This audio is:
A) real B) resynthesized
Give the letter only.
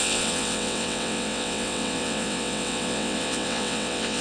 B